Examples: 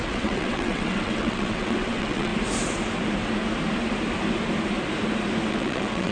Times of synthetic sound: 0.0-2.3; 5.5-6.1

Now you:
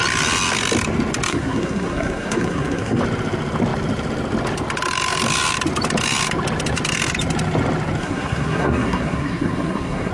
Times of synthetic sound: 1.3-3.0; 8.0-10.1

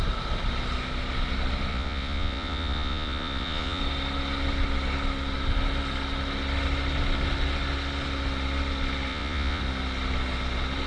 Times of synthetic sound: 1.7-3.8; 9.1-9.6